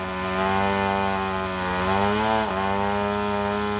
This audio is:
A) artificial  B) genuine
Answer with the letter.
B